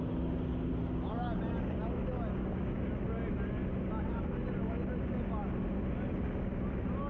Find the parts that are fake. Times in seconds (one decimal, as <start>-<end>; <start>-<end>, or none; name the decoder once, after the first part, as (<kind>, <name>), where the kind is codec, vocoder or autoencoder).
none